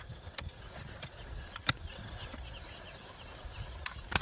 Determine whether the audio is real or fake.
real